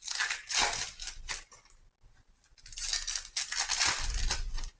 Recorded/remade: recorded